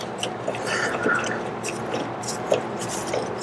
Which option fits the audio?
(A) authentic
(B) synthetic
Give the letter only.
A